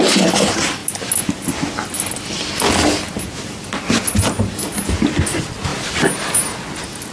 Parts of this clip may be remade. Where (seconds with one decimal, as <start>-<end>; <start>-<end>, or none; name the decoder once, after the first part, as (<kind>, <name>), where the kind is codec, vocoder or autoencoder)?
none